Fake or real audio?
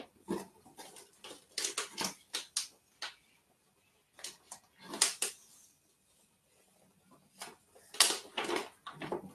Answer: real